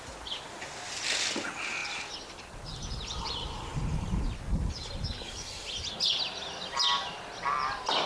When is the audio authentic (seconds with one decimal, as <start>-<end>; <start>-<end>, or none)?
0.0-8.1